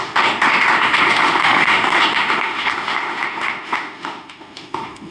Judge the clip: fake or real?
fake